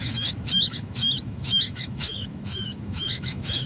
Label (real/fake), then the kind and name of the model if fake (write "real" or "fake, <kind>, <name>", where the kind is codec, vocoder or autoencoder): fake, autoencoder, DAC-VAE